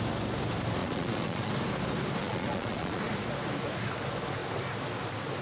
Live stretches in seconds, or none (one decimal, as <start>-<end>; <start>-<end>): 0.0-0.8; 1.5-2.2; 3.0-5.4